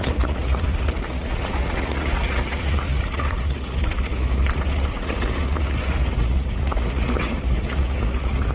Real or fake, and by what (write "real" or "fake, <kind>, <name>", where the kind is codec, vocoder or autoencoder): fake, vocoder, Vocos